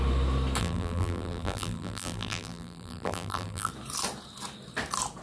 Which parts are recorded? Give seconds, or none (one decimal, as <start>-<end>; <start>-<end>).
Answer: 0.0-0.6; 3.7-5.2